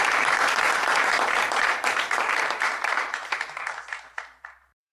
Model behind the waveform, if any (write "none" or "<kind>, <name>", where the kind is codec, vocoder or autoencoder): vocoder, BigVGAN v2